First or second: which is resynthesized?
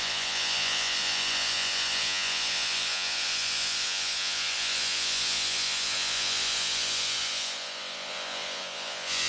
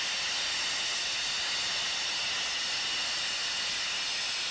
first